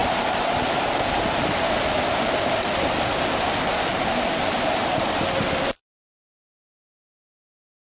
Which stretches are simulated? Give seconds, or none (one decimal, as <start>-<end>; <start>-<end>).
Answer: 0.0-1.5; 3.9-6.7